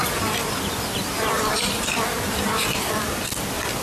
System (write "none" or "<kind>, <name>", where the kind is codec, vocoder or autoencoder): none